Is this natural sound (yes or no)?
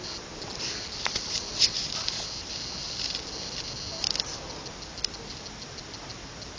yes